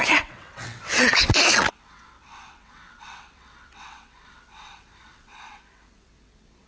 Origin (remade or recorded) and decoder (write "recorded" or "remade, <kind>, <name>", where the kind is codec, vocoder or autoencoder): remade, vocoder, WaveNeXt